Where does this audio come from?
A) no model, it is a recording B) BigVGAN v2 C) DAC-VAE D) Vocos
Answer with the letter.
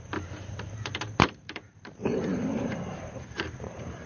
B